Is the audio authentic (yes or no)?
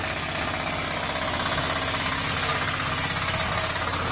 yes